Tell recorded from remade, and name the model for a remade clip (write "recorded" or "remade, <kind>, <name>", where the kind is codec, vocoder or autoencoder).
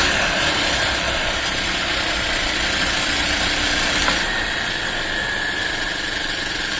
remade, vocoder, BigVGAN v2